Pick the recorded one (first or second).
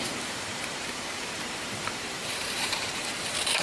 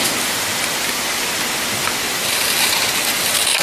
second